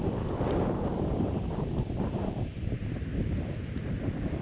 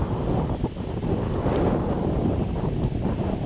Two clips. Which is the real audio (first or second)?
second